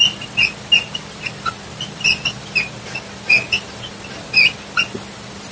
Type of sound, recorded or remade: recorded